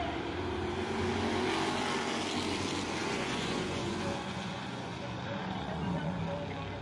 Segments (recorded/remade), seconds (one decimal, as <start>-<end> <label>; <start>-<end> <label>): 0.0-3.0 recorded; 3.0-6.2 remade; 6.2-6.8 recorded